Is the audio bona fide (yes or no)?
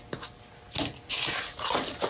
yes